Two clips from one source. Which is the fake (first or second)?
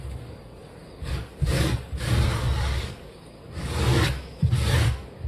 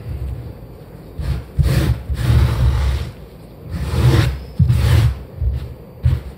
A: first